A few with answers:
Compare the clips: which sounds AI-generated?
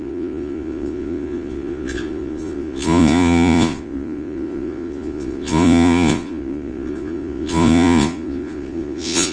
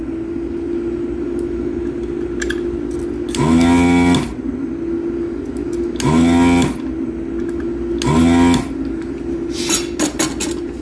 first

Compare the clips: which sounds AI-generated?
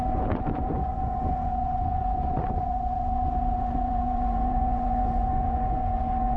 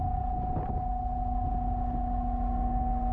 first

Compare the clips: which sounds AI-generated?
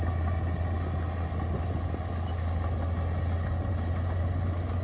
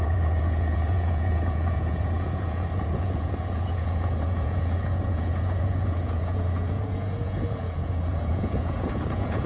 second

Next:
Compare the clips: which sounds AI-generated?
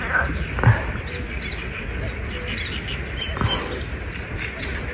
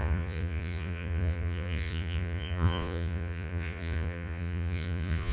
second